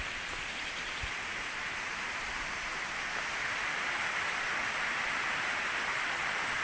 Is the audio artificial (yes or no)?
no